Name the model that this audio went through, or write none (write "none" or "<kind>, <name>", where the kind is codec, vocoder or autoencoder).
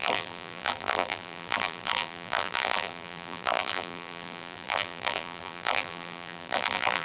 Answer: vocoder, BigVGAN v2